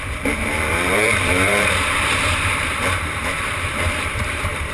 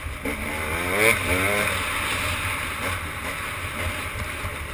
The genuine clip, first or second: second